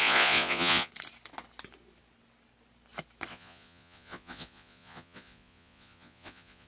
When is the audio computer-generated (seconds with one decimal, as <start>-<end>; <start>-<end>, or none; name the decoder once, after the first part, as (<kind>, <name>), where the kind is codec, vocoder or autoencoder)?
0.0-0.9 (vocoder, Vocos); 3.3-6.7

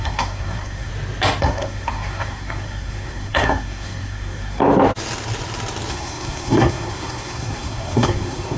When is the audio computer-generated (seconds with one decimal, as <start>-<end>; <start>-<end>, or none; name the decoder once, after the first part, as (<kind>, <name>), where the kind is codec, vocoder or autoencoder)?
0.0-0.9 (codec, SNAC); 1.4-4.6; 5.9-8.6

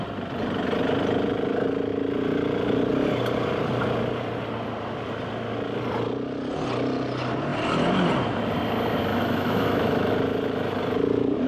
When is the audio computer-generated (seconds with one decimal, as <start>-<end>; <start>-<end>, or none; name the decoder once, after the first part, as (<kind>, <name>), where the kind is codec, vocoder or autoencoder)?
9.1-10.2 (autoencoder, DAC-VAE)

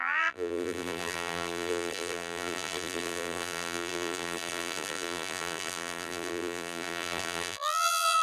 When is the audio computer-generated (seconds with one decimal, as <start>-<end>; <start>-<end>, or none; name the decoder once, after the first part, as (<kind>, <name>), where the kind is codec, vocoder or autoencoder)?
0.0-8.2 (vocoder, BigVGAN v2)

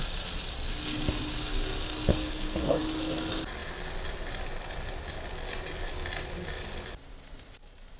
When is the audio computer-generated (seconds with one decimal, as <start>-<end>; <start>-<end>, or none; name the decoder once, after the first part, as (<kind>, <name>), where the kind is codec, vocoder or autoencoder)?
2.1-2.8 (codec, SNAC)

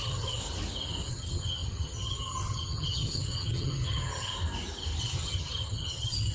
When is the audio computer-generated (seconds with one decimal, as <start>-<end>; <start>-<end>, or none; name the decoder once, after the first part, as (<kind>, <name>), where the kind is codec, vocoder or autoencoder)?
0.0-0.4 (vocoder, HiFi-GAN); 1.1-4.3; 5.0-6.3

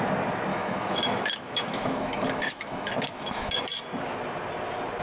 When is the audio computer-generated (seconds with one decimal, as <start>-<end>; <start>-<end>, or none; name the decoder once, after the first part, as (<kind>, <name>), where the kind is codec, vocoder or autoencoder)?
0.5-3.5 (autoencoder, DAC-VAE)

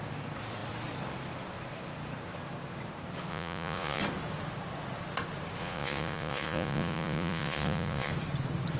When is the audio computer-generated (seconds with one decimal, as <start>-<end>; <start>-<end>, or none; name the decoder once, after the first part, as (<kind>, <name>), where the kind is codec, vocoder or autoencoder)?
3.3-4.0 (vocoder, Vocos); 5.6-8.1